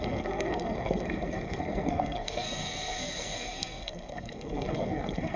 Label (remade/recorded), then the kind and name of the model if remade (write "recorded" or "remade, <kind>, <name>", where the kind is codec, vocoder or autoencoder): remade, codec, SNAC